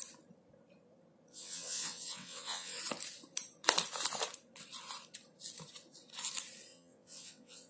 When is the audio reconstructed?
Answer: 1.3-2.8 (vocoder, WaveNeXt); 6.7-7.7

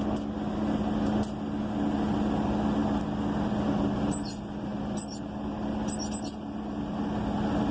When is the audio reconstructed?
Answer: none

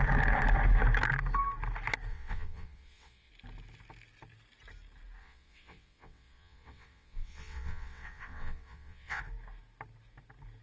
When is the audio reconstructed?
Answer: 2.1-3.3 (vocoder, WaveNeXt); 5.2-9.2